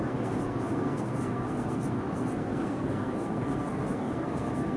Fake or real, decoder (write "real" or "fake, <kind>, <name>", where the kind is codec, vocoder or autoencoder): fake, codec, SNAC